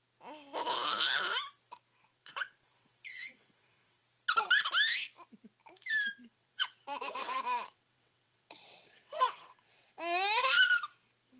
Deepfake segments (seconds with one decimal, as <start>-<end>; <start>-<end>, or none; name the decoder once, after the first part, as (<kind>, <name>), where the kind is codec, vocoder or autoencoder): 2.1-4.0 (vocoder, WaveNeXt); 6.3-10.0